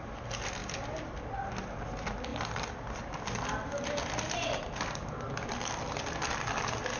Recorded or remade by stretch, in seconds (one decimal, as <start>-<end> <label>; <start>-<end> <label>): 0.0-0.6 recorded; 0.6-1.2 remade; 1.2-7.0 recorded